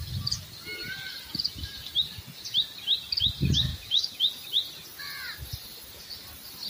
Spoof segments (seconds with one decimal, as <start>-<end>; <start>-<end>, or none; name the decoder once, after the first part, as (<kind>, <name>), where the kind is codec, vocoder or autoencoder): 3.7-4.2 (autoencoder, DAC-VAE)